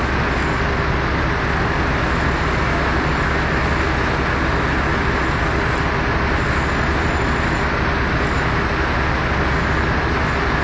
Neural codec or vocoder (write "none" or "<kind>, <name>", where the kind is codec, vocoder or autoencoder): none